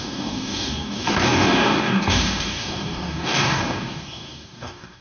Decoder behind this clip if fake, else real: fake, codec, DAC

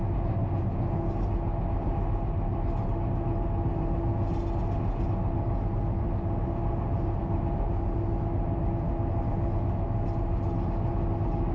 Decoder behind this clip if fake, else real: real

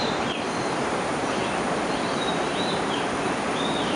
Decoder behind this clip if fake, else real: fake, vocoder, BigVGAN v2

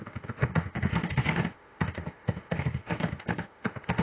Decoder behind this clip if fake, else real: fake, autoencoder, DAC-VAE